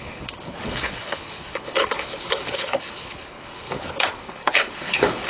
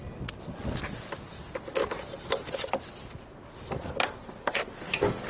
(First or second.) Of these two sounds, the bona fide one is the second